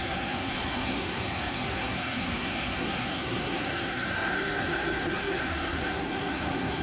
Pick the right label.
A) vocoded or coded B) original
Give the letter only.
A